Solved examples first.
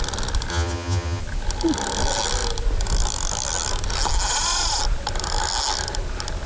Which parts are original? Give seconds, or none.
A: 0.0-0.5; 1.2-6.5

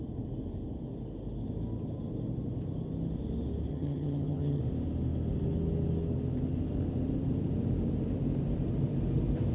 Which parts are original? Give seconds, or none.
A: 0.0-3.7; 4.6-9.5

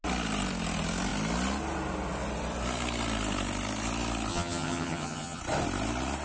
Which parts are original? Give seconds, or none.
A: 0.0-4.3; 5.4-6.2

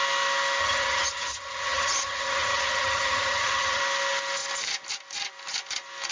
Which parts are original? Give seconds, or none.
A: 0.0-0.6; 3.8-6.1

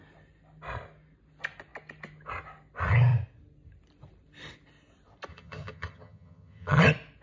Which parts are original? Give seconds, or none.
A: 0.0-5.3; 6.8-7.2

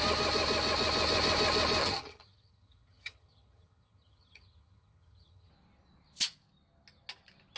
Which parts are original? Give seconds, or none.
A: 0.0-1.8; 5.5-7.6